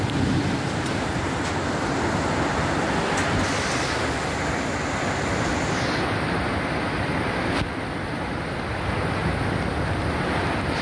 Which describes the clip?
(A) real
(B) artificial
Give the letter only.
A